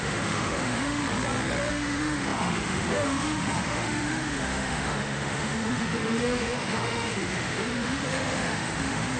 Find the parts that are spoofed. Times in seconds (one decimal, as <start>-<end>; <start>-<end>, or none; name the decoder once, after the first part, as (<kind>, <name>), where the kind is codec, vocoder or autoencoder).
0.0-1.0 (autoencoder, DAC-VAE); 1.7-9.2